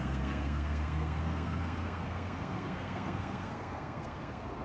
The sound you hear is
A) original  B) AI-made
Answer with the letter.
B